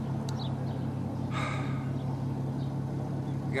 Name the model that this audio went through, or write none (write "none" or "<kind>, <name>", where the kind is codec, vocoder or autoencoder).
none